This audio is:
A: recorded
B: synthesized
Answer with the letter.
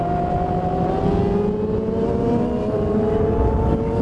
A